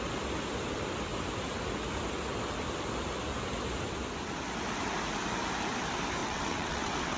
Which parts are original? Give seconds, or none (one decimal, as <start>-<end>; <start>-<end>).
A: 0.0-6.2